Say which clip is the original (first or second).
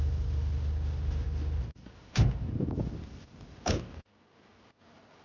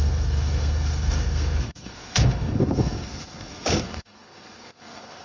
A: first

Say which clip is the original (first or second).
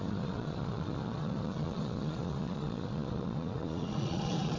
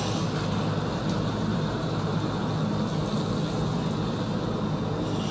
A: second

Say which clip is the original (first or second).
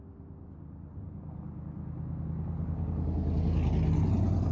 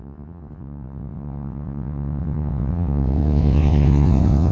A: first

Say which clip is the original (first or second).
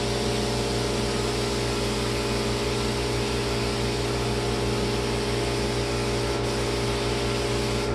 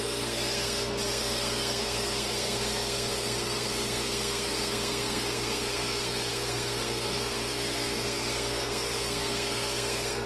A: first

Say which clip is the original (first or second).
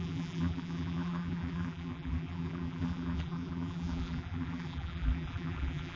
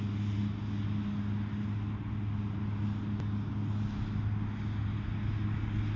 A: second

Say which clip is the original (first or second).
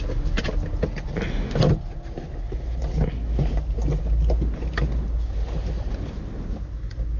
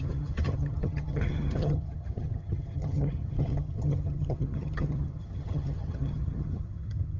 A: first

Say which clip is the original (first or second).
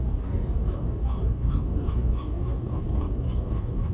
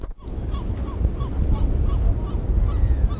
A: second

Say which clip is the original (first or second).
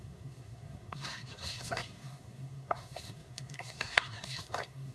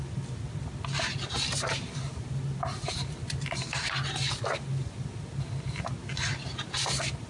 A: second